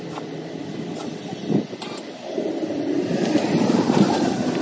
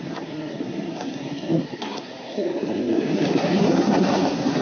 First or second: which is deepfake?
second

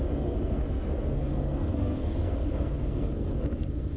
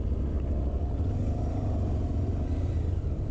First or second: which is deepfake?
first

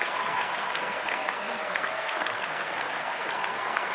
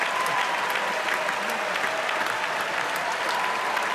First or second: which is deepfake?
first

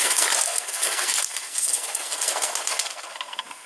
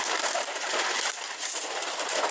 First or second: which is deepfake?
first